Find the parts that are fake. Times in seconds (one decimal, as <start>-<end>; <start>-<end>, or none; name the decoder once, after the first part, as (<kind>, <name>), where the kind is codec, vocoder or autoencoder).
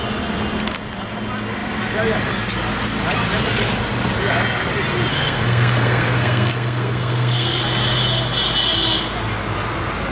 5.1-7.6 (codec, SNAC)